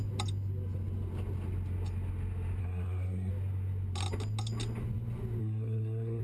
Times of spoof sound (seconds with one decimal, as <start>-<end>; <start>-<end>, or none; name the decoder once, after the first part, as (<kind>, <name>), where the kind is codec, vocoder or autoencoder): 2.6-3.3 (codec, SNAC); 5.4-6.2